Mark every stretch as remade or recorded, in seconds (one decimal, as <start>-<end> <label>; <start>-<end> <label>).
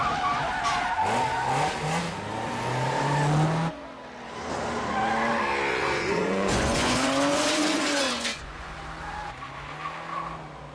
0.0-5.7 recorded; 5.7-8.8 remade; 8.8-10.7 recorded